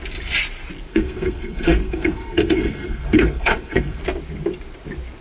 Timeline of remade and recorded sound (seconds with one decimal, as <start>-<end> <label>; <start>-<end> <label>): 0.0-0.9 recorded; 0.9-4.0 remade; 4.0-5.2 recorded

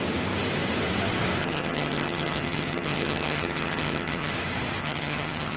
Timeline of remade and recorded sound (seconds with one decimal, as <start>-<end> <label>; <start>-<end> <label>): 0.0-1.4 recorded; 1.4-4.3 remade; 4.3-4.8 recorded; 4.8-5.6 remade